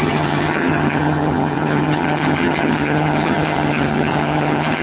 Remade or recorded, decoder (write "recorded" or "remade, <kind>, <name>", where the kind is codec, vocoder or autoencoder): remade, vocoder, HiFi-GAN